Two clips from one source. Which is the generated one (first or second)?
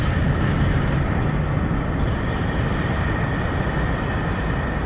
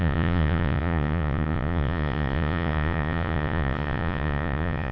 second